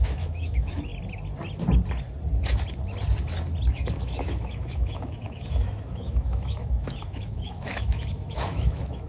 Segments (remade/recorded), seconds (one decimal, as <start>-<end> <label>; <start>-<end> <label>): 0.0-0.9 remade; 0.9-3.7 recorded; 3.7-9.1 remade